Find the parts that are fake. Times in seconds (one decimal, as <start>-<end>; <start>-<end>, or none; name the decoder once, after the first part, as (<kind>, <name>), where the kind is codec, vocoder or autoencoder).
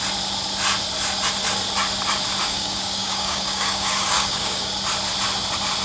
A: 2.4-4.7 (codec, DAC)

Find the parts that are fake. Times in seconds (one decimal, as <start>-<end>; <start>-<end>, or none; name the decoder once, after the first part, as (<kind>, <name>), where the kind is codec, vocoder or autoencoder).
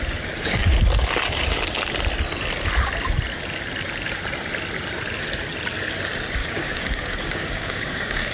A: 6.4-8.3 (codec, DAC)